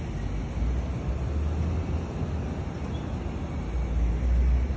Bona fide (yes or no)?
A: yes